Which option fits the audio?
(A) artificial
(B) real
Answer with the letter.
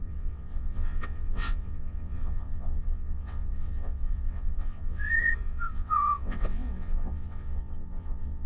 A